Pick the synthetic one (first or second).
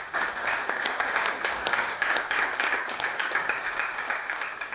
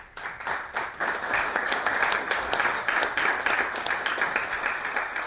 first